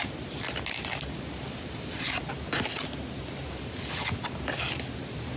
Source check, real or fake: real